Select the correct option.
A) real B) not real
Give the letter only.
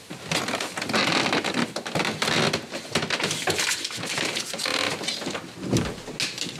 A